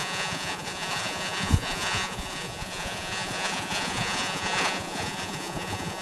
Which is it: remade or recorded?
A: remade